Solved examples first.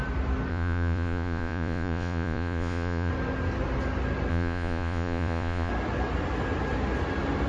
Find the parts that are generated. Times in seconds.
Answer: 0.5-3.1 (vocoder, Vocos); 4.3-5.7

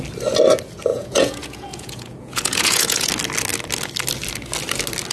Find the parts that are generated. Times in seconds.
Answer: 0.9-3.1 (vocoder, Vocos)

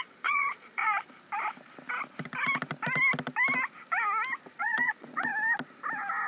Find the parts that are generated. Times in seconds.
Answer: 0.0-0.8 (vocoder, Vocos); 4.5-5.3

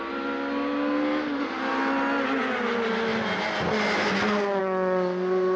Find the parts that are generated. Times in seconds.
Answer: none

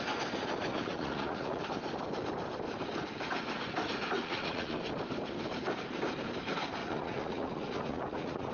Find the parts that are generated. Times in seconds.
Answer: 0.7-1.6 (vocoder, Vocos); 4.2-4.8; 6.8-8.5

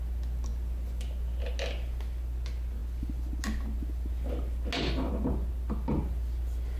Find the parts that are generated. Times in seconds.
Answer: none